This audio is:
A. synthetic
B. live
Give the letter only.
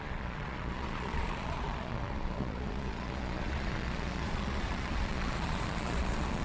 A